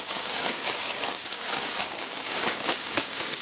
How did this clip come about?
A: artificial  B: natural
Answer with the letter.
A